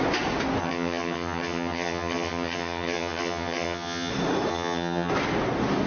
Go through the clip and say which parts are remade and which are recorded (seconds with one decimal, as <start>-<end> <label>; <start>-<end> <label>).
0.0-0.6 recorded; 0.6-4.1 remade; 4.1-4.5 recorded; 4.5-5.1 remade; 5.1-5.9 recorded